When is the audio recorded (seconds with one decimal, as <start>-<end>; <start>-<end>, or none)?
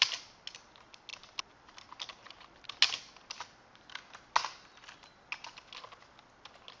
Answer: 0.0-6.8